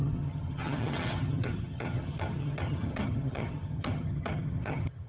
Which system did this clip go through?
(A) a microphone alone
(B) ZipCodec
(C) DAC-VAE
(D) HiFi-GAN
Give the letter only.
D